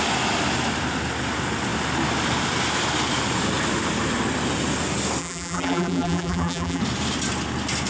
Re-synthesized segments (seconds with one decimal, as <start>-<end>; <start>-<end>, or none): 5.2-6.8